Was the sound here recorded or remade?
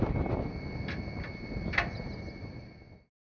recorded